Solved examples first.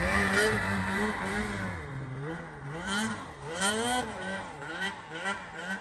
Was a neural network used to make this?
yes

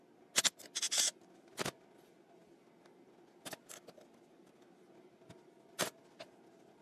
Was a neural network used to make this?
no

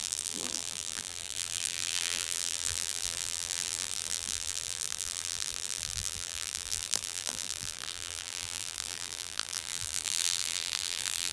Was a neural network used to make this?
yes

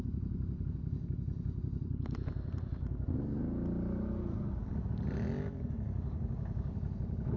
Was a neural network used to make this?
no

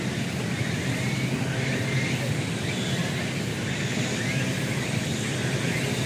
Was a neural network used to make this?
no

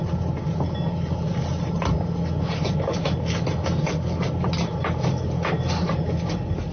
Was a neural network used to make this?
no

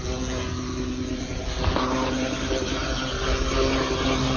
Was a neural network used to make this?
no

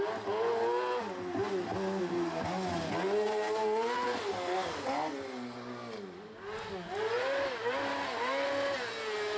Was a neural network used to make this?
no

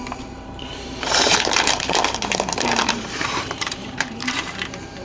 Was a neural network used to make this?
yes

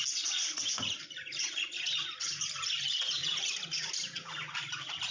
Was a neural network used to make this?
no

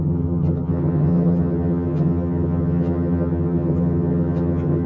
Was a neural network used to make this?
yes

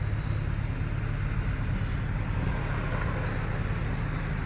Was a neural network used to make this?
no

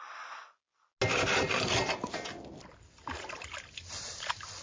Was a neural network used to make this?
no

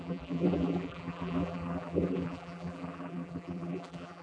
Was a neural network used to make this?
yes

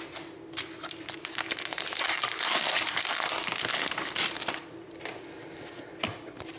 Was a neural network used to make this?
no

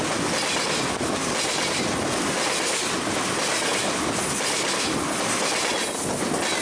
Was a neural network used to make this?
no